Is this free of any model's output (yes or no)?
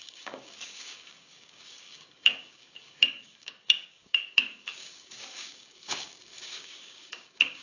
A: no